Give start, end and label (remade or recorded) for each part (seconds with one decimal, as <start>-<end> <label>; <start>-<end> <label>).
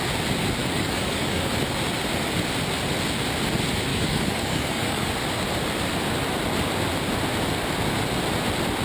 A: 0.0-0.6 recorded; 0.6-1.5 remade; 1.5-3.9 recorded; 3.9-5.1 remade; 5.1-8.8 recorded